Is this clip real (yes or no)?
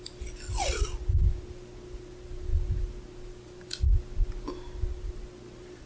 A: yes